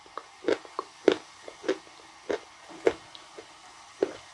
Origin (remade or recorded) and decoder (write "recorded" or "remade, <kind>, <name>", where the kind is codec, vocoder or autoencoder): recorded